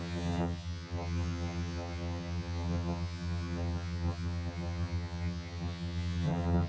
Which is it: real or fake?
fake